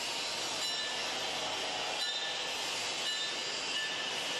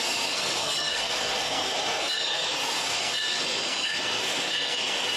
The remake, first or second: second